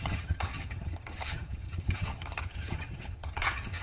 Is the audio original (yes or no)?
no